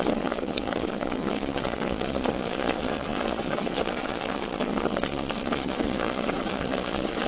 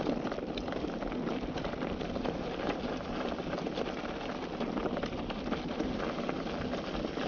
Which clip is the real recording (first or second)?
second